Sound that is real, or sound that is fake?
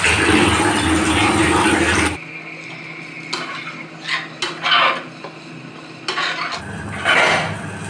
real